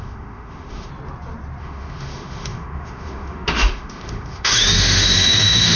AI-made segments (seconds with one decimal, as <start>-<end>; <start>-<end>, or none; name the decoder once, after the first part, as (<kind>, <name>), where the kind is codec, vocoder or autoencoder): 0.0-0.9 (autoencoder, DAC-VAE); 1.6-5.8

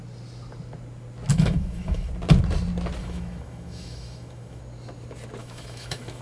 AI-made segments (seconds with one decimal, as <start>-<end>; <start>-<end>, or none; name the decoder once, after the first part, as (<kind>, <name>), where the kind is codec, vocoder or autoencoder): 1.3-2.1 (autoencoder, DAC-VAE); 3.0-4.6; 5.4-6.2

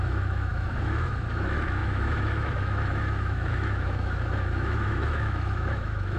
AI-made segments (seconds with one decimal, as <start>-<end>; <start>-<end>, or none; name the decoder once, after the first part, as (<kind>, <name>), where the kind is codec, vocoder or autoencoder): 0.0-6.2 (autoencoder, DAC-VAE)

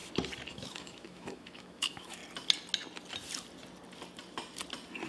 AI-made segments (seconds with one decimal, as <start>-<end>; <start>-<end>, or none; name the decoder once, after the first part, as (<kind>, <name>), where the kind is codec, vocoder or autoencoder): 0.5-2.2 (autoencoder, DAC-VAE)

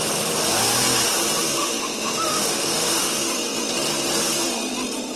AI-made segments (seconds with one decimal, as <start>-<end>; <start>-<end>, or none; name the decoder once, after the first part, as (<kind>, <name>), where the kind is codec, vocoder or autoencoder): 1.6-3.1 (autoencoder, DAC-VAE)

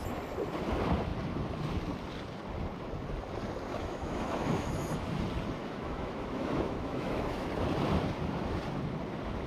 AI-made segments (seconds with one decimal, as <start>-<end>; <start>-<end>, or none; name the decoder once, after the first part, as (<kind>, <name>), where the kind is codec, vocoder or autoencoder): 3.7-4.7 (autoencoder, DAC-VAE); 5.6-7.5